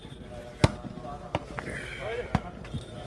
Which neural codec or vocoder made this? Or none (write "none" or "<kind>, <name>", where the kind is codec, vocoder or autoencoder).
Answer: none